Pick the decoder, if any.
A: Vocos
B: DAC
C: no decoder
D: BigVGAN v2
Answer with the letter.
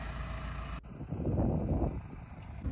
C